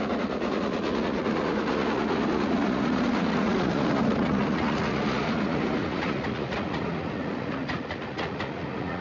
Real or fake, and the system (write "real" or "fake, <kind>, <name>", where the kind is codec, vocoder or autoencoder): fake, vocoder, Vocos